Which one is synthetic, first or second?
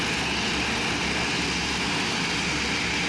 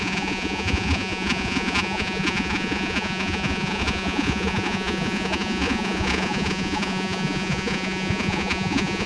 second